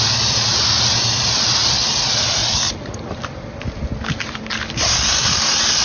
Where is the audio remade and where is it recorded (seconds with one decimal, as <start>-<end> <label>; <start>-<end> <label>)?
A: 0.0-5.8 remade